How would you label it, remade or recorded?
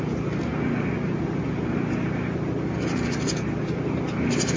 recorded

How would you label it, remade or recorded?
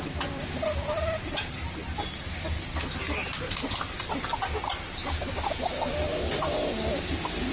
recorded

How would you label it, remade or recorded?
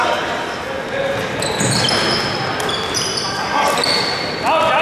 recorded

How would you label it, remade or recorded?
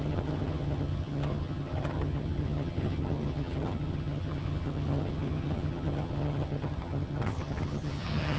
remade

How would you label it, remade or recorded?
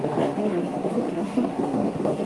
remade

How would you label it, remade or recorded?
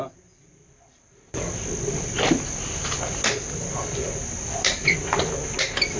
recorded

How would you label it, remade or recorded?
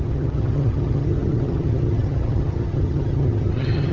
remade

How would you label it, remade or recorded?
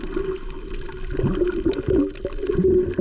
recorded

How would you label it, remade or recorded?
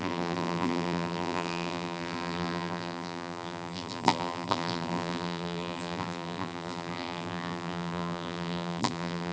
remade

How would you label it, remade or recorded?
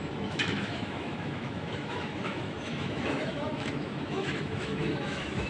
remade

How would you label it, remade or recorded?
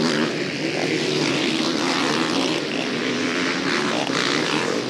recorded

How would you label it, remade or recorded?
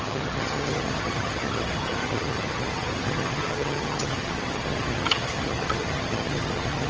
remade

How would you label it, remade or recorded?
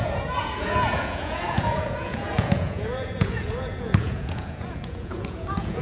remade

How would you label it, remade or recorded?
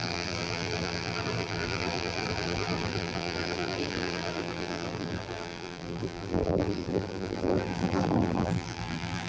remade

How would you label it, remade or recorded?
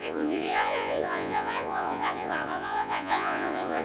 remade